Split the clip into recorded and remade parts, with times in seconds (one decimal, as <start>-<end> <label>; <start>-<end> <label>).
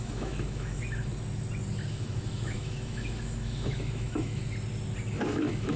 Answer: 0.0-1.1 remade; 1.1-1.9 recorded; 1.9-4.4 remade; 4.4-5.1 recorded; 5.1-5.8 remade